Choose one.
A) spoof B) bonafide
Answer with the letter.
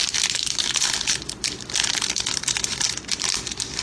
B